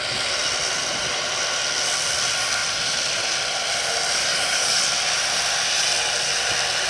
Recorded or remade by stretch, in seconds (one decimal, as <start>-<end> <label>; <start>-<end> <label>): 0.0-4.2 recorded; 4.2-4.8 remade; 4.8-6.9 recorded